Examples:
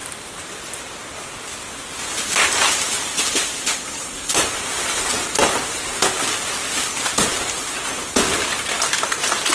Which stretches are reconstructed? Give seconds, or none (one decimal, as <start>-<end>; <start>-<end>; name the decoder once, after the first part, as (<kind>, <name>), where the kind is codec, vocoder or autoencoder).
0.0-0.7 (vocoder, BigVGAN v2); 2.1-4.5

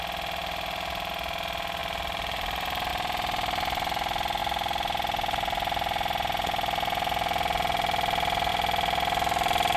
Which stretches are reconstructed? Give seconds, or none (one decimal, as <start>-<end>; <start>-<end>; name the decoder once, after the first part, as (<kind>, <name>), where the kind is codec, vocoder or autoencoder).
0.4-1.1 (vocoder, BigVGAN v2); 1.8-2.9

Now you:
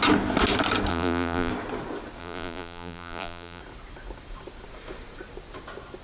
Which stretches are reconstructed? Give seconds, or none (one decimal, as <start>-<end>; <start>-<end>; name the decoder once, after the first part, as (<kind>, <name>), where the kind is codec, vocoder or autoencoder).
0.9-1.5 (vocoder, BigVGAN v2); 2.2-3.6

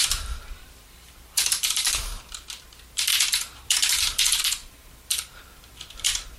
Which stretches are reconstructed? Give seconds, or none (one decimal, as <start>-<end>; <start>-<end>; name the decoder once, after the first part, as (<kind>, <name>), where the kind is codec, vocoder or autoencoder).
0.0-6.4 (vocoder, BigVGAN v2)